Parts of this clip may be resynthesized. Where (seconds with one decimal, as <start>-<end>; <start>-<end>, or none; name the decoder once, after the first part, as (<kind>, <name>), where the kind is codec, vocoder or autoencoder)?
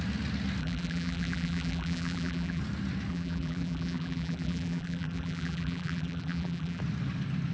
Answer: 0.6-2.6 (vocoder, BigVGAN v2); 3.1-6.8